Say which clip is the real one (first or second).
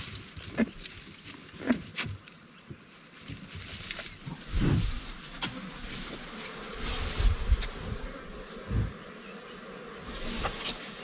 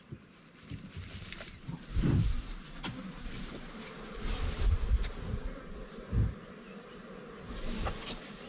first